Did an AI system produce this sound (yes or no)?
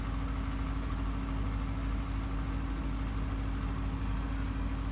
no